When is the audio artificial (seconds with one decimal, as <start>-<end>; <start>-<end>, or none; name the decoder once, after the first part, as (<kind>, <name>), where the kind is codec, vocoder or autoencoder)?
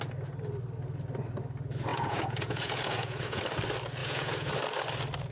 1.9-3.4 (vocoder, Vocos); 4.0-4.5